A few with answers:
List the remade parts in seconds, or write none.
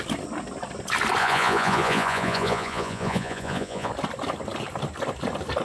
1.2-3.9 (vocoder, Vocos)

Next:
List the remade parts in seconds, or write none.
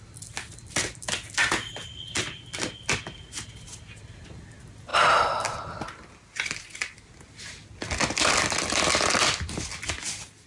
none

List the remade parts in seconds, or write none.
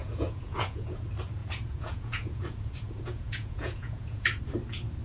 0.0-1.0 (vocoder, Vocos); 1.4-4.4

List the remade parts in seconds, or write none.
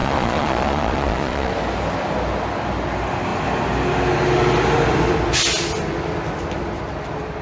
0.0-1.5 (vocoder, Vocos)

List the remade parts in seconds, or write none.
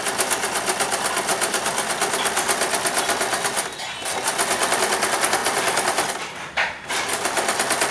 none